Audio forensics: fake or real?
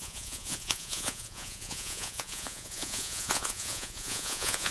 fake